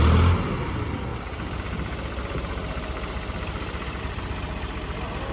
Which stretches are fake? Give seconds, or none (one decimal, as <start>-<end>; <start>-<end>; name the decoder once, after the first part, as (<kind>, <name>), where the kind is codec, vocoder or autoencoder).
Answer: none